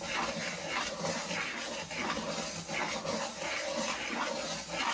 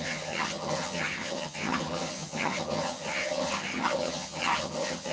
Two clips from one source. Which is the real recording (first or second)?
first